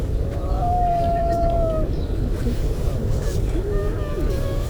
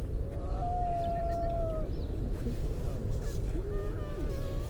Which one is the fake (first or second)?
first